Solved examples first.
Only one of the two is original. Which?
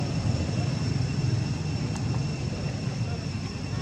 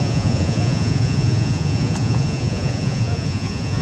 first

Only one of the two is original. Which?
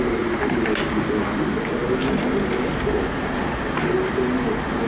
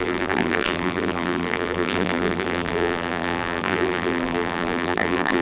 first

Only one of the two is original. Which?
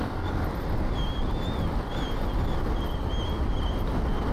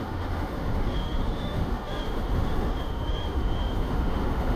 first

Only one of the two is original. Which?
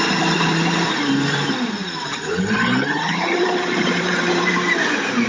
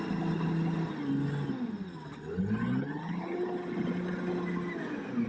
second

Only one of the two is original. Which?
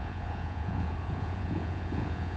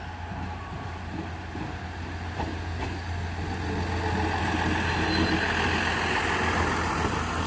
second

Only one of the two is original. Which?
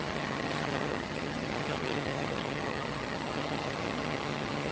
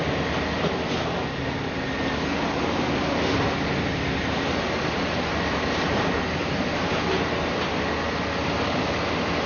second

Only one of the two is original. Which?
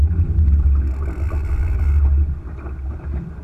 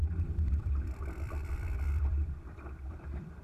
first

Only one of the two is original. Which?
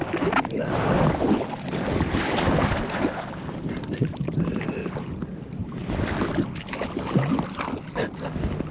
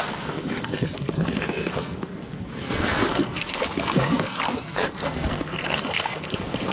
first